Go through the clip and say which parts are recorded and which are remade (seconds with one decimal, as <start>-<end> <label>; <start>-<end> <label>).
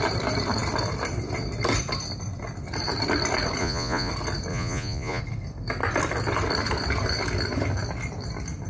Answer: 0.0-3.6 recorded; 3.6-4.1 remade; 4.1-4.5 recorded; 4.5-5.2 remade; 5.2-8.7 recorded